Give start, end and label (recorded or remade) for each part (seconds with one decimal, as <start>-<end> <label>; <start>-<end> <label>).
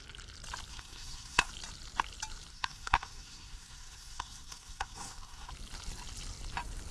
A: 0.0-0.7 recorded; 0.7-1.5 remade; 1.5-2.5 recorded; 2.5-5.5 remade; 5.5-6.9 recorded